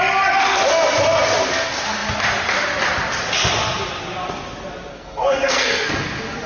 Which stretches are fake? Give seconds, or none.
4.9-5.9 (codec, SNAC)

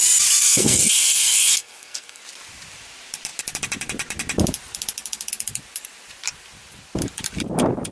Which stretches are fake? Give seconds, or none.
0.4-2.2 (codec, SNAC)

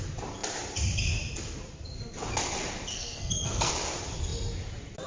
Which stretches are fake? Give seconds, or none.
2.9-3.7 (codec, SNAC)

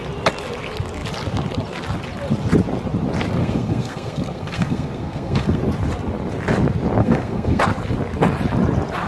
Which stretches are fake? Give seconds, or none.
3.4-5.6 (codec, SNAC); 7.0-7.6

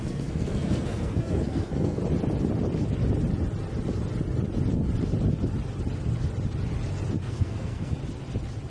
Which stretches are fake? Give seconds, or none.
0.0-2.0 (codec, SNAC); 7.2-8.0

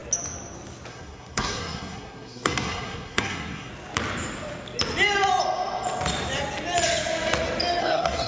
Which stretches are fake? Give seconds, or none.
0.9-3.7 (codec, SNAC); 7.8-8.3

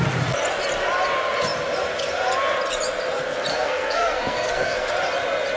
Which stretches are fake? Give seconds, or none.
3.5-4.9 (codec, SNAC)

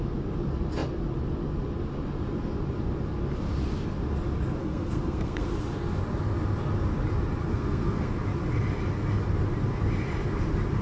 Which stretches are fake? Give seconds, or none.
4.6-5.5 (codec, SNAC); 7.5-8.1